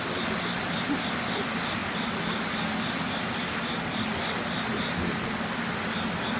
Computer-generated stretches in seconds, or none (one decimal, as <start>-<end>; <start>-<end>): none